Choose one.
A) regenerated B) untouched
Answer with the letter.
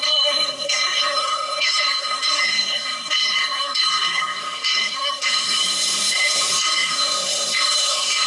A